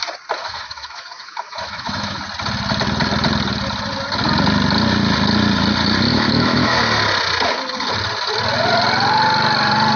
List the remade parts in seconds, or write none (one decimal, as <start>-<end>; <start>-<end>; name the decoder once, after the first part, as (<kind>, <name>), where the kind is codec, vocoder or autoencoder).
0.4-2.2 (autoencoder, DAC-VAE); 6.1-6.8